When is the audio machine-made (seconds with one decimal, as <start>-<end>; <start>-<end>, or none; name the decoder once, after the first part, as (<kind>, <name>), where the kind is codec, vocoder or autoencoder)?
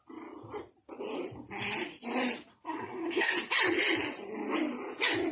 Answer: 2.5-3.3 (codec, SNAC)